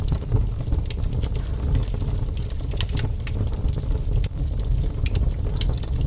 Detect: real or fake real